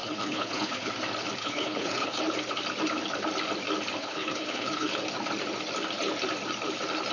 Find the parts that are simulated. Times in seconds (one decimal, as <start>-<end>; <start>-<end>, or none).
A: 0.0-0.9; 1.4-2.2; 4.0-5.0